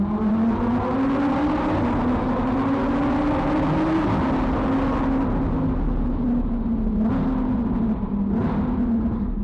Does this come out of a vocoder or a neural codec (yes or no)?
no